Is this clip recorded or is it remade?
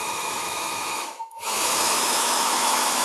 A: remade